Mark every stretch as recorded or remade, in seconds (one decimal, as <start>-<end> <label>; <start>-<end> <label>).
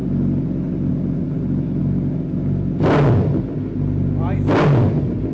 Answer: 0.0-0.9 remade; 0.9-5.3 recorded